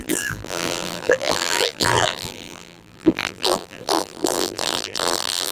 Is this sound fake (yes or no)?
yes